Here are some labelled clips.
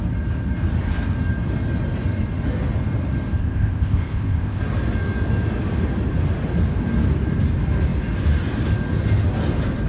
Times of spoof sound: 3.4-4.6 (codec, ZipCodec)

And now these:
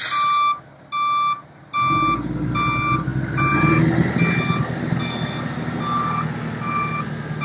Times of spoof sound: none

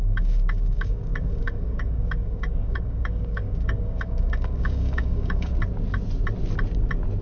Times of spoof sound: 0.0-5.5 (codec, DAC)

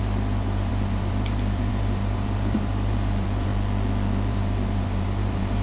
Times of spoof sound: 0.0-3.5 (vocoder, BigVGAN v2); 4.3-5.6

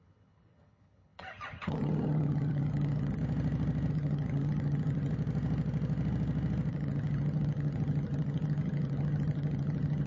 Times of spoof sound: 0.0-3.2 (vocoder, HiFi-GAN); 3.9-5.1; 6.7-10.1

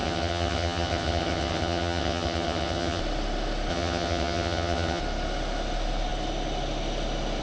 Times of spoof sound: 0.0-3.0 (vocoder, HiFi-GAN); 3.7-5.0

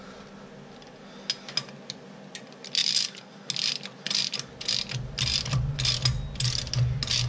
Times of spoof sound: none

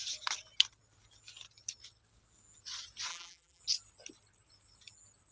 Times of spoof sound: 3.1-3.6 (vocoder, BigVGAN v2)